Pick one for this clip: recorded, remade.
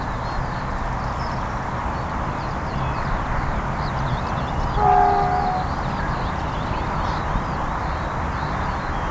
recorded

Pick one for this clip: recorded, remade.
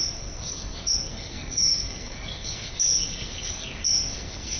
remade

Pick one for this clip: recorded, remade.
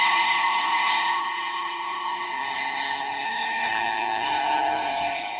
remade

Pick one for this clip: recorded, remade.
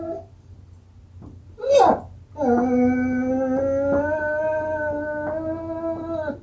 recorded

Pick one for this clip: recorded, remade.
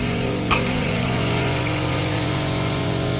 remade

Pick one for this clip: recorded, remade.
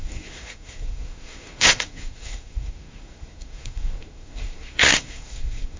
remade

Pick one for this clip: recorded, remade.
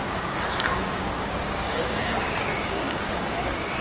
remade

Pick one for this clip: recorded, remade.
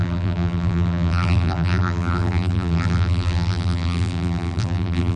remade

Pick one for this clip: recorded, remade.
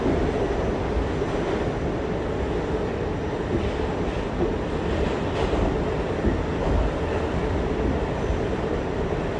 recorded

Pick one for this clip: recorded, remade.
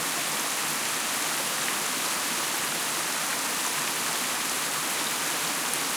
recorded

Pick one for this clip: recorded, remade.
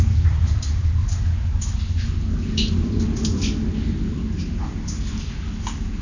recorded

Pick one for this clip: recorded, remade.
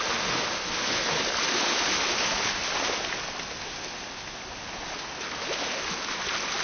recorded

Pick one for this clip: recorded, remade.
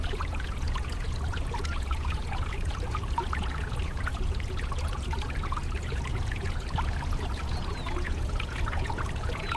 remade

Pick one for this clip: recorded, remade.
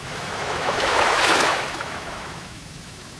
remade